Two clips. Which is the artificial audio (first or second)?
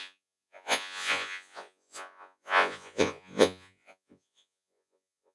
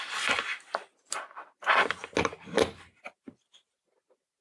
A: first